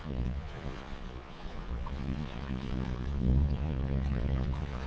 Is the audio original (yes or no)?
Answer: no